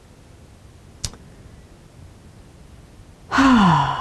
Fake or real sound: real